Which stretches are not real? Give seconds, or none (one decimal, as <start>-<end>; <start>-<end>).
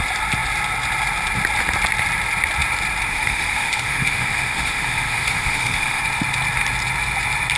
3.1-6.0